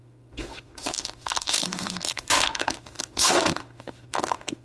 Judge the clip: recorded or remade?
remade